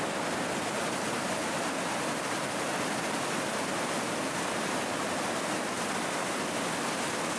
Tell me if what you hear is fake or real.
real